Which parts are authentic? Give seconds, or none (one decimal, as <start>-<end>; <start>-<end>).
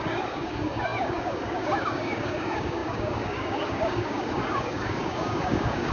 none